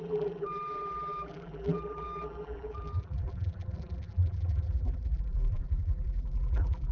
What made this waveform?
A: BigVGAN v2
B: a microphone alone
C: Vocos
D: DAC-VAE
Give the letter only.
A